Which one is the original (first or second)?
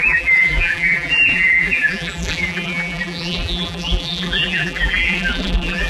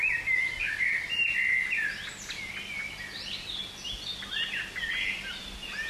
second